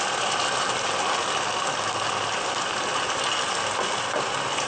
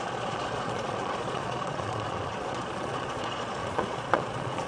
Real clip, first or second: first